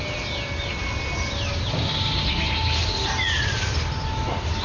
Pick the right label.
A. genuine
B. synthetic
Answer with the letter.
A